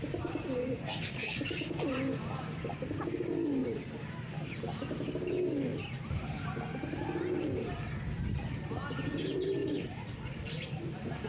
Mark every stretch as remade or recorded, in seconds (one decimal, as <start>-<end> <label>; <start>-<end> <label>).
0.0-1.2 recorded; 1.2-1.9 remade; 1.9-3.6 recorded; 3.6-4.5 remade; 4.5-5.7 recorded; 5.7-8.1 remade; 8.1-9.6 recorded; 9.6-10.2 remade; 10.2-11.3 recorded